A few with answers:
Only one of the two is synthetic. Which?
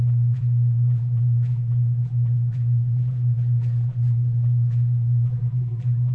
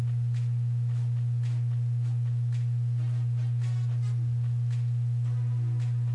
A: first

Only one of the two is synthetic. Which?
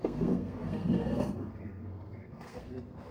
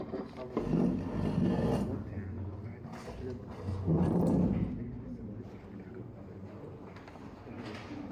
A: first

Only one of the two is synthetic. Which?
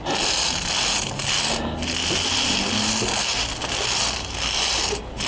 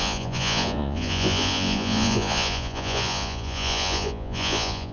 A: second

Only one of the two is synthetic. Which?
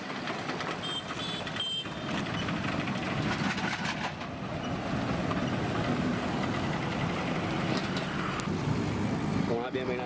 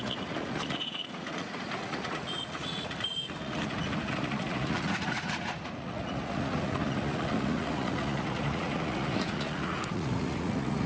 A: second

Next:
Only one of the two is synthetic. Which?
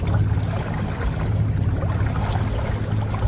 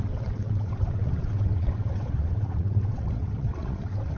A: second